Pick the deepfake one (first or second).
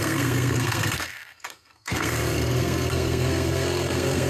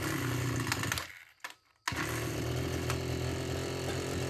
first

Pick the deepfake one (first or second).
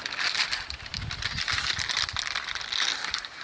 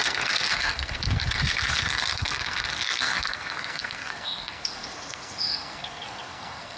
second